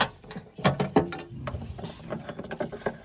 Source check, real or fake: real